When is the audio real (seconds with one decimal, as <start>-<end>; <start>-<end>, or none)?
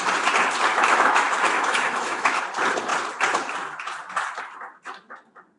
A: 0.0-0.7; 2.4-5.6